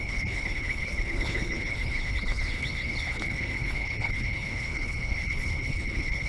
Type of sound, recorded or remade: remade